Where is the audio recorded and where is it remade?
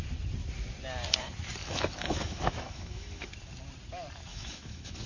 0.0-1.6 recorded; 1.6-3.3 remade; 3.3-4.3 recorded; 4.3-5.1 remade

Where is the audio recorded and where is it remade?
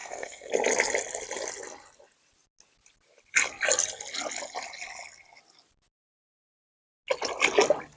0.0-0.5 remade; 0.5-8.0 recorded